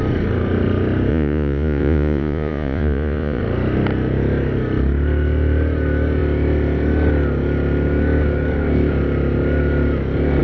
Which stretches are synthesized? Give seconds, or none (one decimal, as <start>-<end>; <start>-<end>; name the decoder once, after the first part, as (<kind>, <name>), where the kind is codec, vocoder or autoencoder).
1.1-3.4 (vocoder, Vocos)